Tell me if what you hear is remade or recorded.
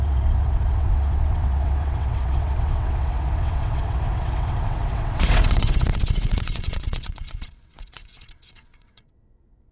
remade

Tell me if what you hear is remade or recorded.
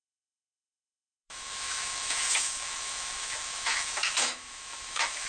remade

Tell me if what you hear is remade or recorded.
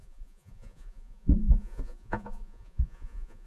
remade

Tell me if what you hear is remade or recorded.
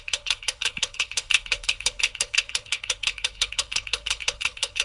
remade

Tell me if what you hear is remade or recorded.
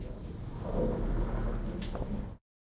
recorded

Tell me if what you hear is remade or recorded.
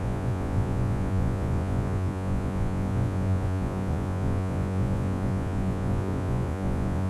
remade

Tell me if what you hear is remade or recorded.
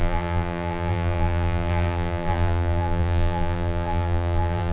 remade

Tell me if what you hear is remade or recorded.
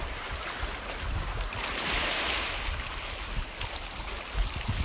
recorded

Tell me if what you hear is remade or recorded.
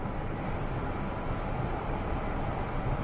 recorded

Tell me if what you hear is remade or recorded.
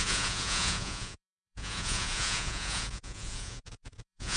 remade